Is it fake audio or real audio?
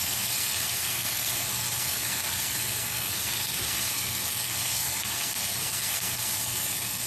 fake